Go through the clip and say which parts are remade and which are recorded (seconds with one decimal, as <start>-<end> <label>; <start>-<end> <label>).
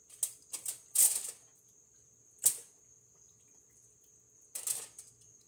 0.0-5.5 recorded